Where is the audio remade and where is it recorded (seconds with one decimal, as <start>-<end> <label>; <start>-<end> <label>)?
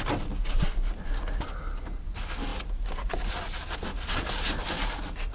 0.0-5.3 recorded